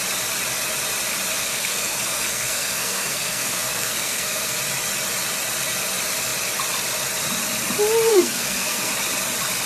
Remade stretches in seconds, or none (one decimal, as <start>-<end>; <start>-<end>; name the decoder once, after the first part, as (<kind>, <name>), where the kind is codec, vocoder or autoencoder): 1.4-4.6 (codec, SNAC); 8.1-8.9